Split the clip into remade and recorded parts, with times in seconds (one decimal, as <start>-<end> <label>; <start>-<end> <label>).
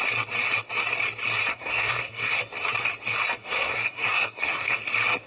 0.0-1.5 recorded; 1.5-2.4 remade; 2.4-3.4 recorded; 3.4-4.8 remade; 4.8-5.3 recorded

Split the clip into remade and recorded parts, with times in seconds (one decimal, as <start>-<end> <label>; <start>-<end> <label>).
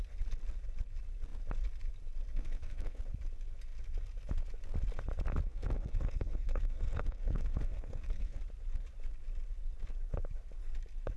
0.0-2.3 recorded; 2.3-3.0 remade; 3.0-5.5 recorded; 5.5-8.4 remade; 8.4-11.2 recorded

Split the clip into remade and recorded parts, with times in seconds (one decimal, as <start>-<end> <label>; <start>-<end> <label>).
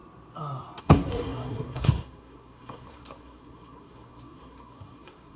0.0-0.8 recorded; 0.8-5.4 remade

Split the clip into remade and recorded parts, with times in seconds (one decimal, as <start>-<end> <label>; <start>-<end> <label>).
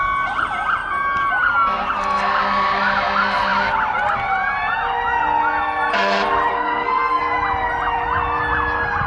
0.0-6.5 recorded; 6.5-7.2 remade; 7.2-9.1 recorded